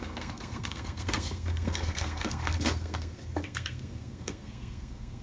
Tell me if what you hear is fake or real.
fake